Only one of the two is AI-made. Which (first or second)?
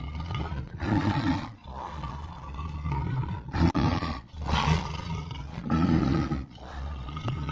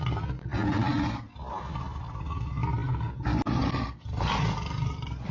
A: first